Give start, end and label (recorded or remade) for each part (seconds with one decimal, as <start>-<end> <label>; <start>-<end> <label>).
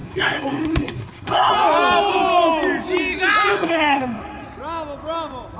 0.0-1.5 remade; 1.5-3.5 recorded; 3.5-4.2 remade; 4.2-5.6 recorded